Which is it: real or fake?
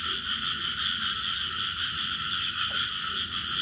real